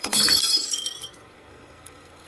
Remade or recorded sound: remade